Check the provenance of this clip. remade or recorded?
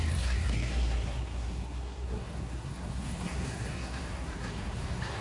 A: remade